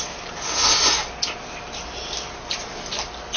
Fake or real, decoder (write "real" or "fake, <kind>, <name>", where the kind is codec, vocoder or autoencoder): real